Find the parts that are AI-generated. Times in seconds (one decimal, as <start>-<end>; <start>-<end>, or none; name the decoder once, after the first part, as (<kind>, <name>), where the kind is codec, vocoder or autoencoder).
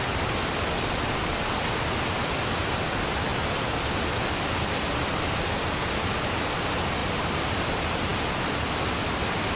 none